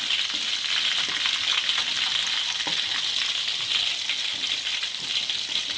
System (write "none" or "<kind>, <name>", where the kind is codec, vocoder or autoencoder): none